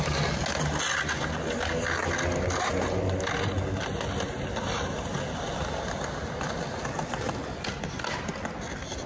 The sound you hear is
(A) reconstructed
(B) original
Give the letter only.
B